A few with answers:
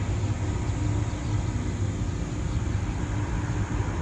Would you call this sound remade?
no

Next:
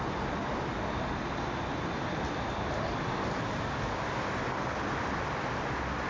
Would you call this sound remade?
no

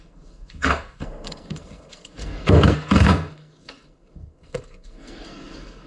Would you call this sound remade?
yes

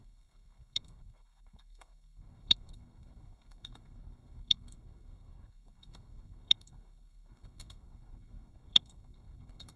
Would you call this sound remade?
yes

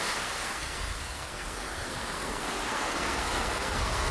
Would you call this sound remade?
yes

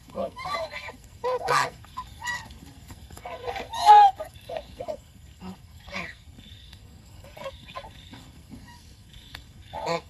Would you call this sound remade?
yes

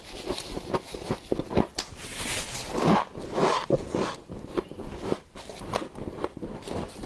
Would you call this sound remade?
no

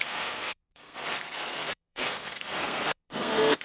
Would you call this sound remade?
yes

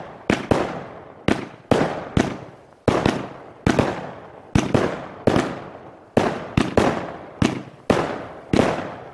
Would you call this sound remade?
no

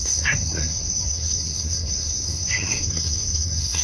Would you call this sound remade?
yes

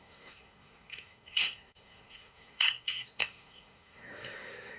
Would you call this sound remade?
yes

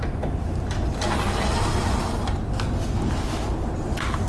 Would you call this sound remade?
no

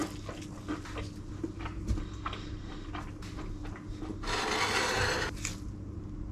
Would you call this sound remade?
no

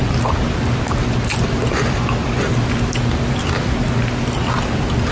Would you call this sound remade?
no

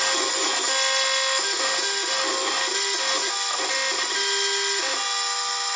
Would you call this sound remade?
no